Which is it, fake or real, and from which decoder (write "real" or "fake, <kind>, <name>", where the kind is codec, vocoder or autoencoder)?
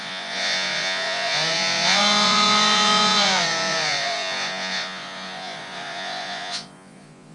fake, vocoder, Vocos